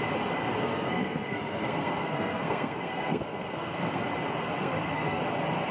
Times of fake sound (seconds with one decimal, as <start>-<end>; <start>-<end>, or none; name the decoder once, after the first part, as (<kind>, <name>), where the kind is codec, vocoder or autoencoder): 0.6-4.0 (codec, SNAC); 4.6-5.2